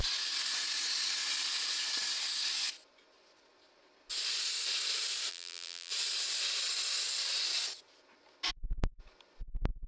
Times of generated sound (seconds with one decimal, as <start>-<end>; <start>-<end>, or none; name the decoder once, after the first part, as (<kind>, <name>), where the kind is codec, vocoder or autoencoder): 5.3-5.9 (vocoder, BigVGAN v2)